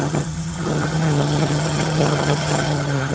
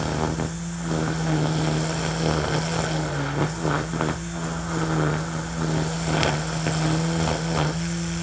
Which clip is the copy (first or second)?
first